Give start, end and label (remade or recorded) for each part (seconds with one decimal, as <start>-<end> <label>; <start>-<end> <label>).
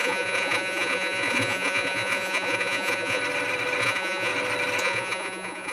0.0-3.2 remade; 3.2-3.8 recorded; 3.8-4.3 remade; 4.3-4.8 recorded; 4.8-5.7 remade